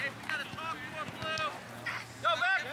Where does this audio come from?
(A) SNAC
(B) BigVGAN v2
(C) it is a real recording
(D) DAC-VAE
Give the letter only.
C